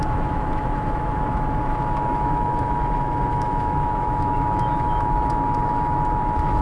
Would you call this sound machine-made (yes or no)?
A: yes